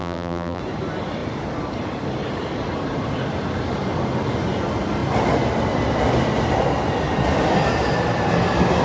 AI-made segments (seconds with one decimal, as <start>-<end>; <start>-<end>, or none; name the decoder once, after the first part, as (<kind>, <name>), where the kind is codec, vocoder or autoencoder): 0.0-0.6 (vocoder, BigVGAN v2)

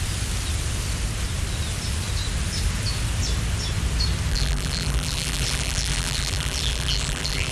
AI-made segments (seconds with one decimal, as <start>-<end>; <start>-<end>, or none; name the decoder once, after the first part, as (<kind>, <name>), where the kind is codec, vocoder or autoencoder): 4.3-7.5 (vocoder, BigVGAN v2)

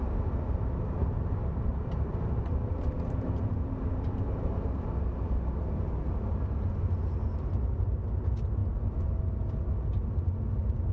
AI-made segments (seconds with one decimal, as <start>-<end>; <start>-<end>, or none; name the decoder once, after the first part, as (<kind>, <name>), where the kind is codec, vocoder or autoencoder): 1.0-4.7 (vocoder, BigVGAN v2)

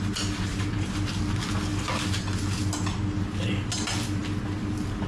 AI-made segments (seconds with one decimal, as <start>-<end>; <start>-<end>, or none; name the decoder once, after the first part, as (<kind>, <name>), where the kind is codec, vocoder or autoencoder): 0.5-1.2 (vocoder, BigVGAN v2)

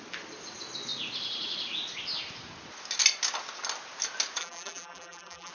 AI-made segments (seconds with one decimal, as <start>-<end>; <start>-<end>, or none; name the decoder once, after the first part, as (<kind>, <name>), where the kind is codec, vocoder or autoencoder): 4.4-5.5 (vocoder, BigVGAN v2)

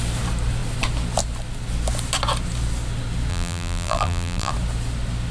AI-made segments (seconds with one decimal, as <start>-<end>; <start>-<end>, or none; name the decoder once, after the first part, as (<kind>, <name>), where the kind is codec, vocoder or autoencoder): 3.3-4.5 (vocoder, BigVGAN v2)